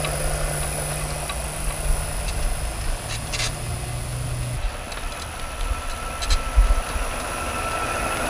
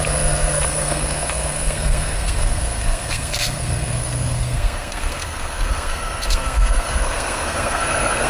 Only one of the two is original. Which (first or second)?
first